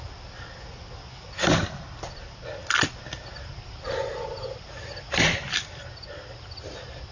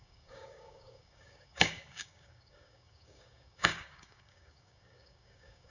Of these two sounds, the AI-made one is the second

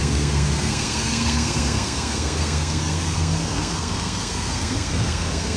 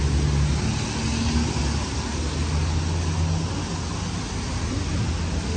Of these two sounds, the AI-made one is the first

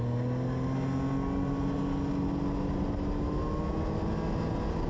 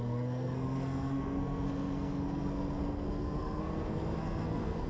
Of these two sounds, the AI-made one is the second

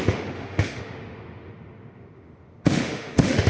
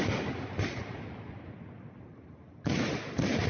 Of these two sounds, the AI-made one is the first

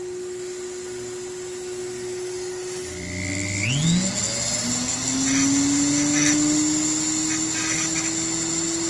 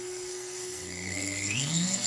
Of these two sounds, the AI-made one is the second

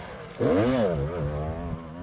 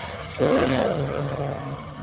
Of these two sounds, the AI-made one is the second